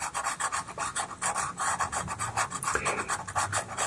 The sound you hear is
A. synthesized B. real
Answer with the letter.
B